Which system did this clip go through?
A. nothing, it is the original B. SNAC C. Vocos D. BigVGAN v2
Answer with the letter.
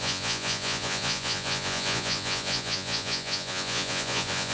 C